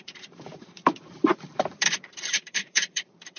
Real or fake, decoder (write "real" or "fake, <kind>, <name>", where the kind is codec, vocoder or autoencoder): fake, vocoder, BigVGAN v2